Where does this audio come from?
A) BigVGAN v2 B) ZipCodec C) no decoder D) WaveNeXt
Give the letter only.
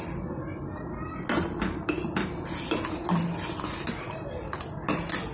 C